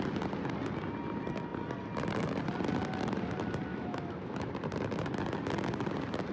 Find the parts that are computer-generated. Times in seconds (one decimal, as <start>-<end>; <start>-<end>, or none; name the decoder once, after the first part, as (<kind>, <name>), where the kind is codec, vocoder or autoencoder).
3.7-4.5 (autoencoder, DAC-VAE)